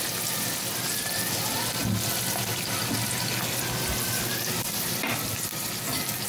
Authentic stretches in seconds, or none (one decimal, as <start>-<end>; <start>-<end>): 0.0-6.3